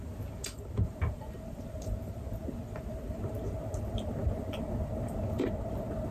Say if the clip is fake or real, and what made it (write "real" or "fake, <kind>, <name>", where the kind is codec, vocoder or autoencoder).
fake, vocoder, BigVGAN v2